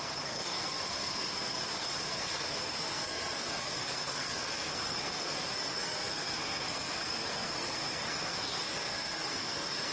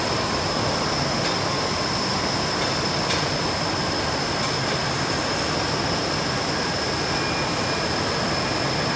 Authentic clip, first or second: second